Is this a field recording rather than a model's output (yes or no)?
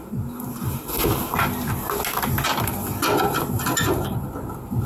yes